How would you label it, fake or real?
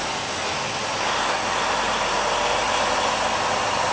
real